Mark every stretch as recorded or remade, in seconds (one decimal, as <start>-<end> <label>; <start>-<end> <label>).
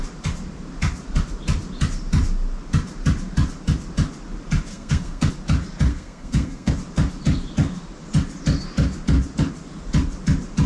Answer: 0.0-4.7 recorded; 4.7-5.3 remade; 5.3-5.9 recorded; 5.9-6.7 remade; 6.7-10.7 recorded